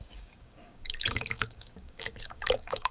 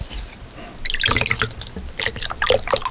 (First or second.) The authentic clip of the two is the second